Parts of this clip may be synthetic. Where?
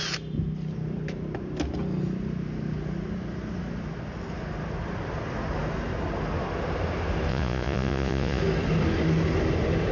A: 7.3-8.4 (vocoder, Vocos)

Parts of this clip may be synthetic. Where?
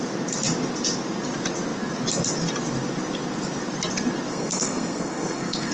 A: 4.3-5.7 (codec, SNAC)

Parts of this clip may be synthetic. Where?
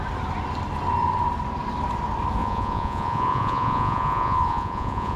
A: 2.4-5.2 (vocoder, Vocos)